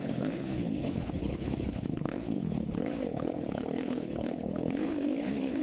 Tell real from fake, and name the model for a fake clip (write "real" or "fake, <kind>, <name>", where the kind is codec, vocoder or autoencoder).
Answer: fake, codec, HILCodec